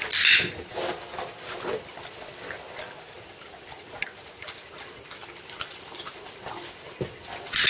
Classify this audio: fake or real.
real